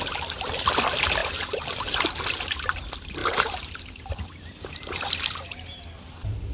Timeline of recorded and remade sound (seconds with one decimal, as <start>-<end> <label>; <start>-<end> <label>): 0.0-1.2 recorded; 1.2-2.2 remade; 2.2-3.2 recorded; 3.2-5.8 remade; 5.8-6.5 recorded